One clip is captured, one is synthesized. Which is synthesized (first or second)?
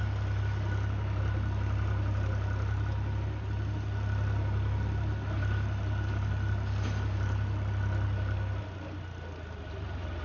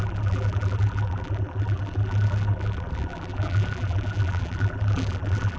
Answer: second